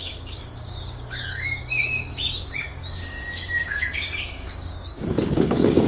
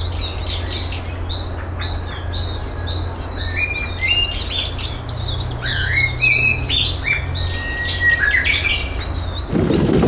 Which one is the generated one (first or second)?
first